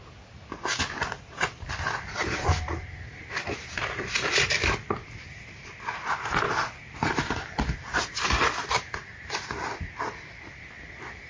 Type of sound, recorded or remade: recorded